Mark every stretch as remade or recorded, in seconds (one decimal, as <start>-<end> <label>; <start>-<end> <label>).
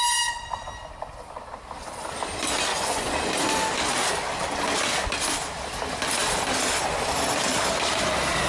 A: 0.0-2.7 recorded; 2.7-3.3 remade; 3.3-8.5 recorded